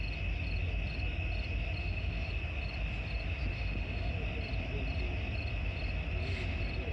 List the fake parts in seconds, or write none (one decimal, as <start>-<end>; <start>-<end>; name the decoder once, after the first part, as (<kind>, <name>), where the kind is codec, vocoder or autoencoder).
1.8-2.3 (autoencoder, DAC-VAE); 3.5-4.1